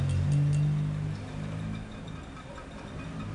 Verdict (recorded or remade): recorded